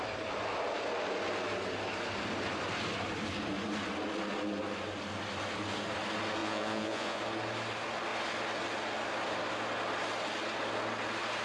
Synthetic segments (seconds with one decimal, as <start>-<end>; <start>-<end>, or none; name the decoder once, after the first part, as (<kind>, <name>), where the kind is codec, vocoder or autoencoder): 6.4-7.2 (vocoder, Vocos)